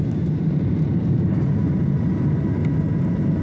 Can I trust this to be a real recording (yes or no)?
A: no